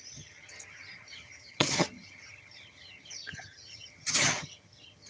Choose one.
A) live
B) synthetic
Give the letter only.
B